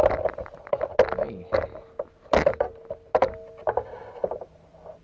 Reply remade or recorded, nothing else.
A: recorded